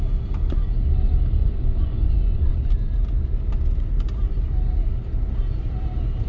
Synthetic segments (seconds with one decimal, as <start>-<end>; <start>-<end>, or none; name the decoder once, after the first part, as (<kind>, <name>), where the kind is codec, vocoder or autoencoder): 1.4-2.5 (vocoder, Vocos)

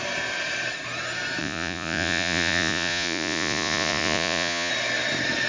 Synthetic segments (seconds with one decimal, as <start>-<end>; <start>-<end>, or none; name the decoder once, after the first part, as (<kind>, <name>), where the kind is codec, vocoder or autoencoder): 1.4-4.7 (vocoder, Vocos)

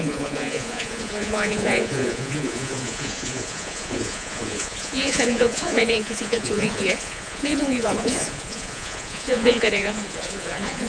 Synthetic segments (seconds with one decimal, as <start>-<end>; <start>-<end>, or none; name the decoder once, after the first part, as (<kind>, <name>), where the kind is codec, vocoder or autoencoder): 0.0-10.9 (vocoder, Vocos)

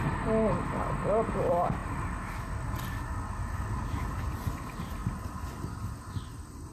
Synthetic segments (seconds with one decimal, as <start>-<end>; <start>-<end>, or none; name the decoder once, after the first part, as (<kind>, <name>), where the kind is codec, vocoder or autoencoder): none

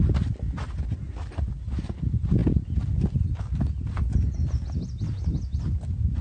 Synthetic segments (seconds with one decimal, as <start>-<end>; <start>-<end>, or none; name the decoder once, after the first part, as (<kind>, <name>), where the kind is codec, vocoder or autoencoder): none

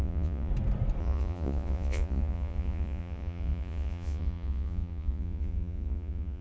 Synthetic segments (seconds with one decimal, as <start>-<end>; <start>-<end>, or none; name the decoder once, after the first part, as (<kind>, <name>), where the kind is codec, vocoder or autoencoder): 0.0-0.5 (vocoder, Vocos); 1.0-6.4